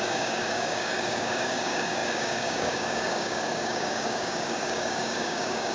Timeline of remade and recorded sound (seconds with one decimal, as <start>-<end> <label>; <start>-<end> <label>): 0.0-5.7 remade